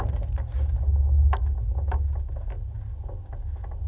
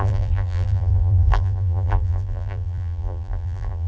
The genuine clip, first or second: first